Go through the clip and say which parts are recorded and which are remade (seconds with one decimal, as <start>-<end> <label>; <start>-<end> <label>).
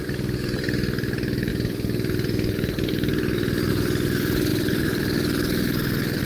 0.0-1.5 recorded; 1.5-3.7 remade; 3.7-4.5 recorded; 4.5-6.2 remade